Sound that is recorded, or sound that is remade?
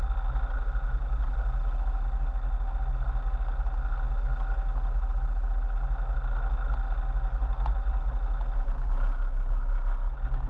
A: recorded